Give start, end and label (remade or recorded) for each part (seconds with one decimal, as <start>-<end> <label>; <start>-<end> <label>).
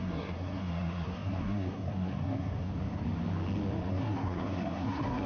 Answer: 0.0-2.7 remade; 2.7-3.9 recorded; 3.9-5.3 remade